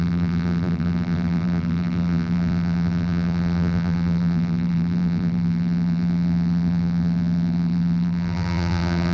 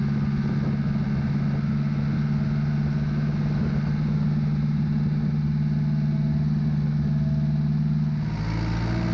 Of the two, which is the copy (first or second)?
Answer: first